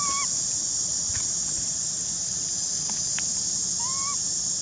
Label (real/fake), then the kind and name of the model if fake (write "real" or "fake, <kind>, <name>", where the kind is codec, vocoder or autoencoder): real